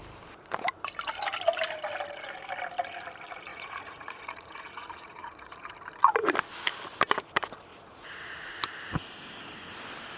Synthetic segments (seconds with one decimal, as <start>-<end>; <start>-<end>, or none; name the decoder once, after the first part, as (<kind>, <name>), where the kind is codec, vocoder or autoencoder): 3.5-5.7 (vocoder, Vocos); 7.7-8.5